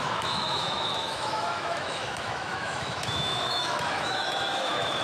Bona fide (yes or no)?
no